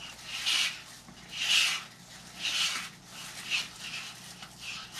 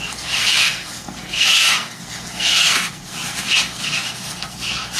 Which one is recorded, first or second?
first